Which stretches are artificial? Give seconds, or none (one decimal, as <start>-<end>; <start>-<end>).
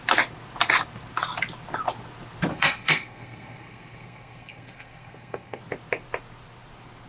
2.5-5.6